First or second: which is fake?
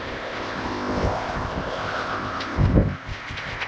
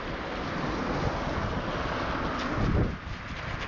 first